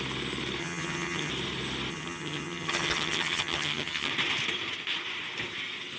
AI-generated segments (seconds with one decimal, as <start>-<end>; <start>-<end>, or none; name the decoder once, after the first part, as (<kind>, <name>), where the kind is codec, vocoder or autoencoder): 0.6-1.3 (vocoder, HiFi-GAN); 1.9-4.1